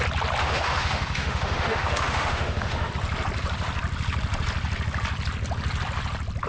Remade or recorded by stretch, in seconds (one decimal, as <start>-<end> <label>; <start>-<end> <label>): 0.0-0.4 recorded; 0.4-2.9 remade; 2.9-6.5 recorded